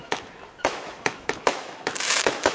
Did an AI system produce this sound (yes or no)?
yes